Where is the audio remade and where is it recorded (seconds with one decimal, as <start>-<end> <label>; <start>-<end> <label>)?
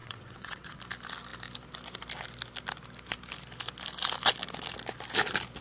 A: 0.0-0.8 remade; 0.8-5.6 recorded